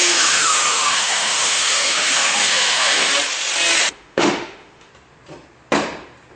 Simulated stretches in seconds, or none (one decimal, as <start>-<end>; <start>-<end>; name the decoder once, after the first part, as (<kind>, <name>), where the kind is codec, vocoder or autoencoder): 0.0-3.1 (autoencoder, DAC-VAE); 3.8-4.9